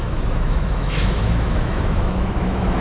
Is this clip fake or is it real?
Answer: fake